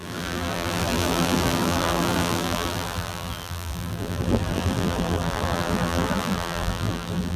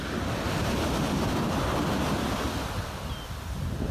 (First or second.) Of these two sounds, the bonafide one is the second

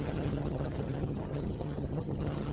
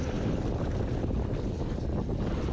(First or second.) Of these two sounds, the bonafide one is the second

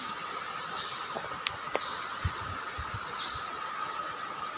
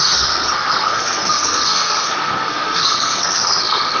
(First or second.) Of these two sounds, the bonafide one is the first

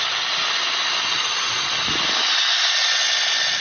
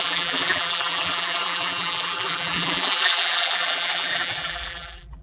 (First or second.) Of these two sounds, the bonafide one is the first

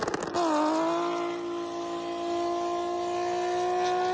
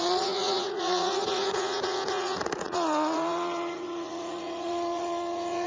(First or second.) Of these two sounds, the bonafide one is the first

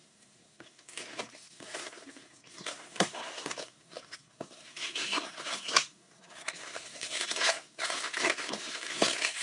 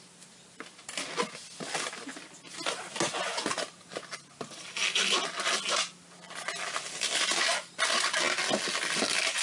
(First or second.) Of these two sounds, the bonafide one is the second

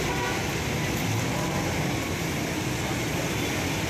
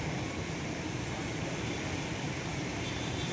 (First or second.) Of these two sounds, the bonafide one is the first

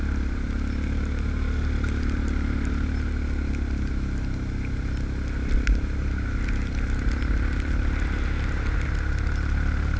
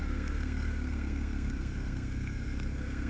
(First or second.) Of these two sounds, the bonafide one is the first